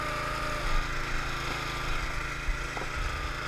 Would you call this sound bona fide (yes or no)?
yes